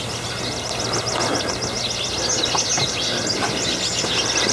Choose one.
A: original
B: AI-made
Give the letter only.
A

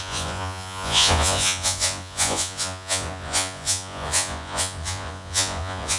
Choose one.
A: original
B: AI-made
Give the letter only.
B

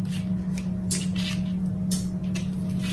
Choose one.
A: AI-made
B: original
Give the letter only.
B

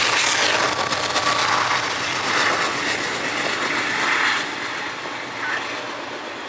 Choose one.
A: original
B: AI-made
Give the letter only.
A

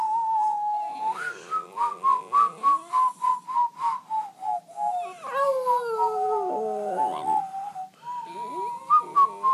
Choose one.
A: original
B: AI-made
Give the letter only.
A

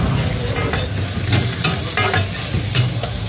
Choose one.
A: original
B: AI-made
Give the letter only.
A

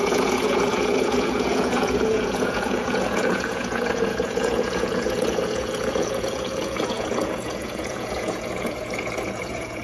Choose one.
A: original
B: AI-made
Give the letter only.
B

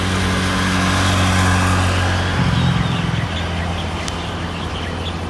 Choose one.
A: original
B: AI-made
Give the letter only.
A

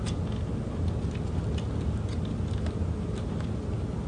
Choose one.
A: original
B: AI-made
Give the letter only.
A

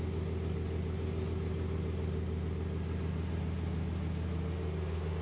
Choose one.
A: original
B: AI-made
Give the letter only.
A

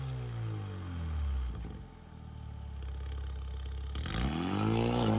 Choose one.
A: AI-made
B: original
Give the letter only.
B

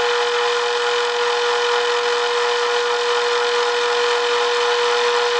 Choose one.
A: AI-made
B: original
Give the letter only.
B